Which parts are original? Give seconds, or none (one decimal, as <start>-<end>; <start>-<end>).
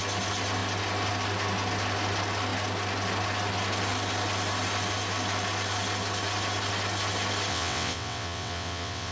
0.0-7.5